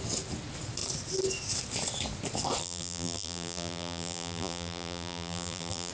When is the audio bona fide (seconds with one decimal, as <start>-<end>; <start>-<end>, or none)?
0.0-2.6